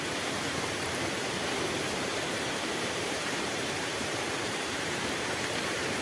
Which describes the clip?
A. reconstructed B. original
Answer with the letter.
A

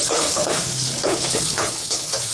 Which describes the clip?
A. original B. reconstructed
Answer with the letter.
B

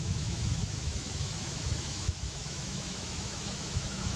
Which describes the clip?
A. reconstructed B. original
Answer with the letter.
A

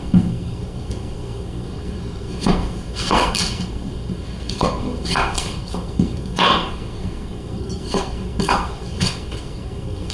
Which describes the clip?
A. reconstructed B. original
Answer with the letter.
A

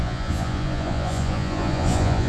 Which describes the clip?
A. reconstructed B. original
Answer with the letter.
A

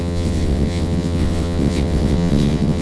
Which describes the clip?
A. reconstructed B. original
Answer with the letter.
A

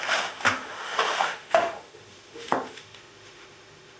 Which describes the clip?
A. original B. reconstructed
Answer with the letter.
B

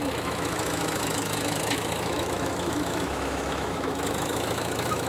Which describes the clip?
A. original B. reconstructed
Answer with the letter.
B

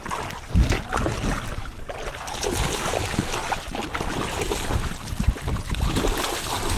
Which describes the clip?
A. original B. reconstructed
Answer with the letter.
A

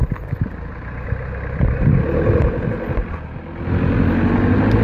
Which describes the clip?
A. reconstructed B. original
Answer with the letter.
B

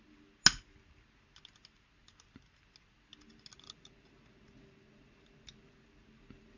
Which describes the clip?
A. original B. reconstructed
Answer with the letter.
A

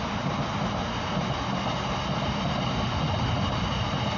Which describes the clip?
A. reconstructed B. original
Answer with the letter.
B